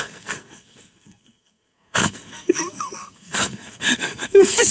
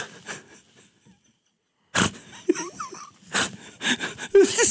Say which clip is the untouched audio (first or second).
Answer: second